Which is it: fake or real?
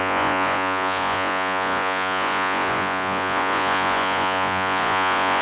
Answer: fake